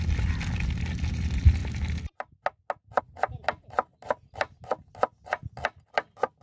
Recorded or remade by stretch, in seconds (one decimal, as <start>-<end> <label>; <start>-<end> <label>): 0.0-6.4 recorded